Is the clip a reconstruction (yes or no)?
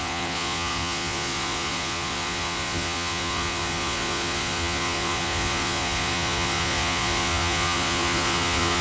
yes